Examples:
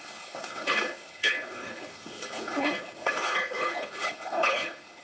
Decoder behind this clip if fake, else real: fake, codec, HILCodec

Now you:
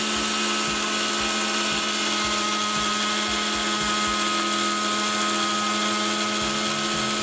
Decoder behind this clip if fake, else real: real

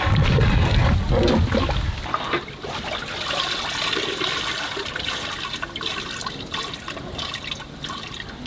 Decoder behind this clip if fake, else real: real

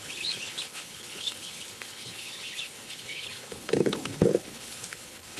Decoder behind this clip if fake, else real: fake, codec, HILCodec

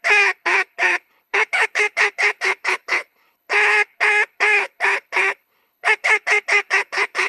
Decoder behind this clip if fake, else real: fake, codec, HILCodec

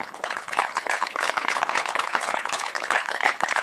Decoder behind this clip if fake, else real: fake, codec, HILCodec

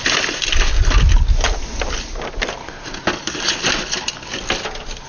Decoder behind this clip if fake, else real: real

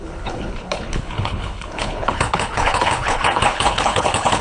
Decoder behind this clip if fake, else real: fake, codec, HILCodec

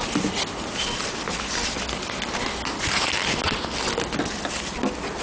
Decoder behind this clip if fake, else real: real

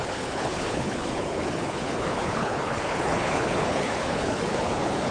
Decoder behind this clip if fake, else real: fake, codec, HILCodec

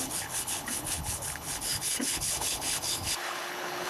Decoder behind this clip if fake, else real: fake, codec, HILCodec